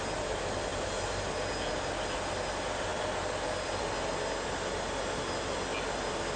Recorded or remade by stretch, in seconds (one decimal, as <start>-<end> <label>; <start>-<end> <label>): 0.0-6.4 recorded